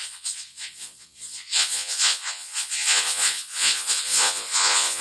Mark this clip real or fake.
fake